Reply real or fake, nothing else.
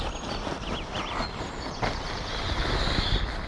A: real